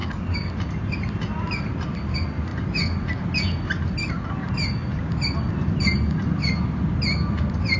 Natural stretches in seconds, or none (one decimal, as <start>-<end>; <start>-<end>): 0.5-7.8